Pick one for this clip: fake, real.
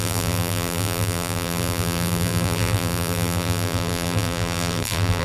fake